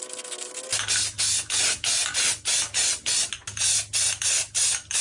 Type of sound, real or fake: real